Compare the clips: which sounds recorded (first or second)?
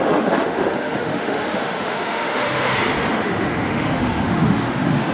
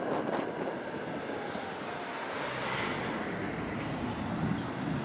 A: second